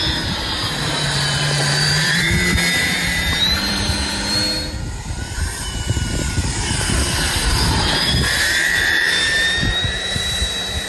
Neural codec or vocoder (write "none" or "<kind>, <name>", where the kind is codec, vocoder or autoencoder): vocoder, BigVGAN v2